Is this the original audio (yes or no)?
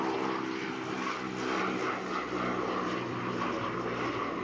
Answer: yes